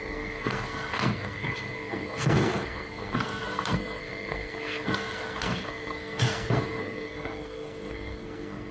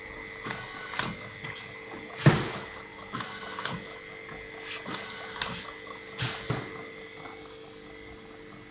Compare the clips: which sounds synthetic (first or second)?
first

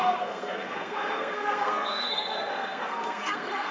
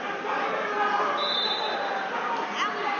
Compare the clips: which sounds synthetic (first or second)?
first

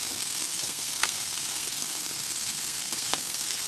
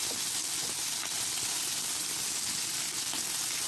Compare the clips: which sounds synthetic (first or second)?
first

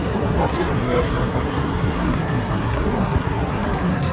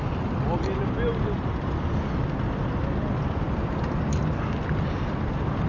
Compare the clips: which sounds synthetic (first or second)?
first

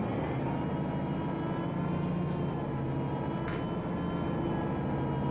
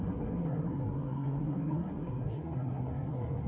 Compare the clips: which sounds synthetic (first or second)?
second